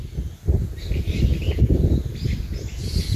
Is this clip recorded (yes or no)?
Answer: yes